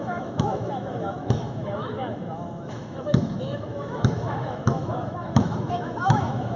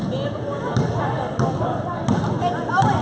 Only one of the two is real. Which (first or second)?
second